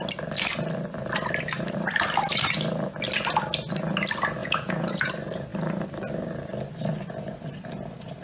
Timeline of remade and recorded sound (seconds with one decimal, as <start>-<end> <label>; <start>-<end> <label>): 0.0-4.4 recorded; 4.4-5.1 remade; 5.1-8.2 recorded